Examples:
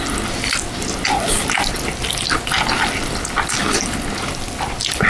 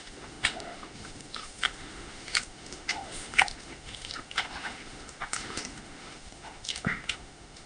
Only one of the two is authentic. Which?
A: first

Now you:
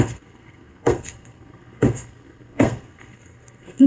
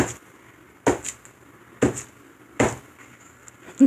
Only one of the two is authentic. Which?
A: second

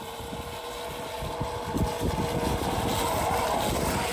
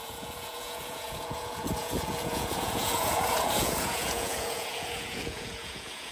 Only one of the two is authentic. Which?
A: first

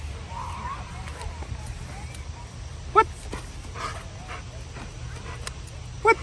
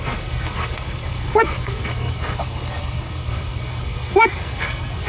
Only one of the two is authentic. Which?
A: first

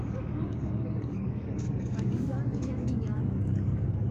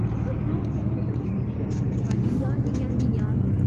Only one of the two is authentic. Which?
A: second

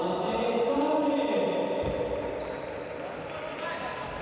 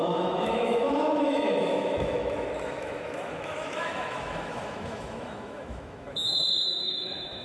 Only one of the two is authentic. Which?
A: first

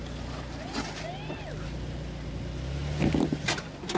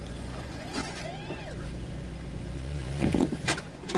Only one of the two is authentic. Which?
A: first